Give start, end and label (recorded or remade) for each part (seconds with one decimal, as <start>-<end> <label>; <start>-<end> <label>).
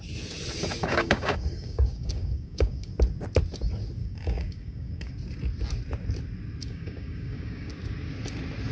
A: 0.0-0.8 recorded; 0.8-2.9 remade; 2.9-4.0 recorded; 4.0-5.1 remade; 5.1-6.6 recorded; 6.6-7.7 remade; 7.7-8.7 recorded